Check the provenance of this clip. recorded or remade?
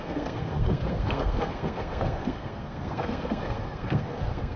remade